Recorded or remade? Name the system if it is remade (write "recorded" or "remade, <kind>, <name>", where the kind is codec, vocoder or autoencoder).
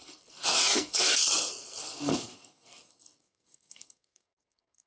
remade, codec, SNAC